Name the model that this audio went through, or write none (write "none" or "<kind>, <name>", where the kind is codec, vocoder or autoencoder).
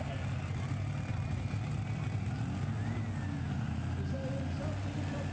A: none